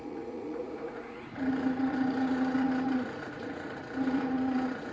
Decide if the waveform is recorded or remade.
remade